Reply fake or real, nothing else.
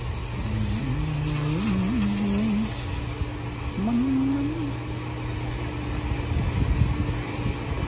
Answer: real